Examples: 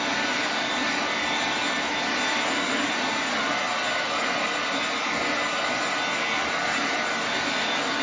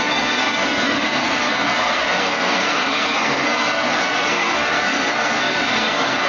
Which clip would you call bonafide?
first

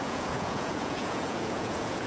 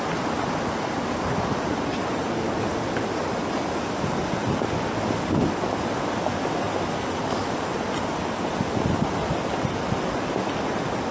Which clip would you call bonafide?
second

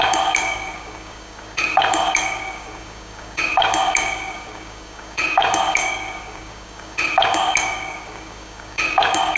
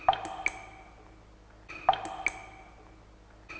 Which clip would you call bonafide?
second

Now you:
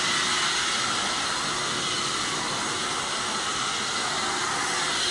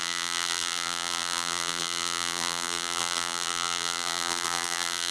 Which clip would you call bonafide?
first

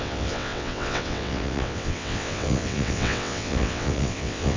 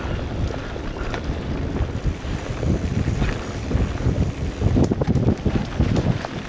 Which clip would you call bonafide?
second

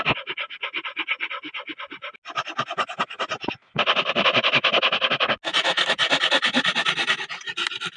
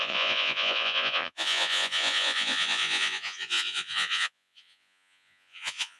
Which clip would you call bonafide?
first